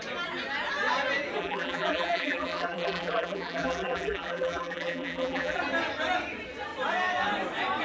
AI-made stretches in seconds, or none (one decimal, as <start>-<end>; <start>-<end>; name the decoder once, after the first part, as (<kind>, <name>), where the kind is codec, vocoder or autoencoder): 1.4-5.6 (vocoder, BigVGAN v2)